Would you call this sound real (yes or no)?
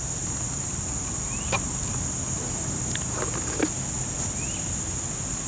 yes